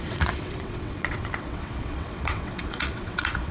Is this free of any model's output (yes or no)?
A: no